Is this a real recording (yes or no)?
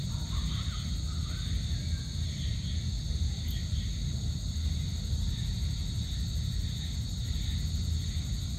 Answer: yes